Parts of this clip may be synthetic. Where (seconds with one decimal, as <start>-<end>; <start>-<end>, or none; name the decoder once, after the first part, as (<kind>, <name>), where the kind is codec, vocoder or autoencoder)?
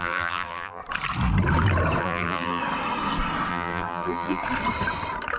0.0-0.8 (vocoder, BigVGAN v2); 2.0-2.6; 3.5-4.4